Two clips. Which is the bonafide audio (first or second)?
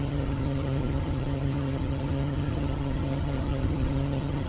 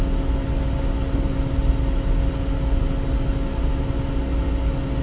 second